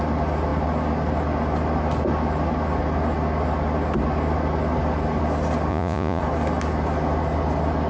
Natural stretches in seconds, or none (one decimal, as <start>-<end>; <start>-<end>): 0.0-5.7; 6.2-7.9